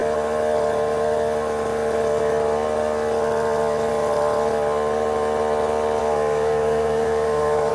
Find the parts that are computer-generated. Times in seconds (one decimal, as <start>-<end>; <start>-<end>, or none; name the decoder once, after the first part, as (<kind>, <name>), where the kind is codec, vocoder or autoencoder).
6.0-7.7 (codec, DAC)